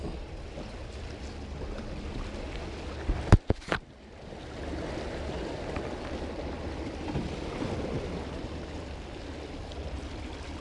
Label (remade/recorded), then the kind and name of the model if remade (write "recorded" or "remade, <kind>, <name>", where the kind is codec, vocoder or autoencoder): recorded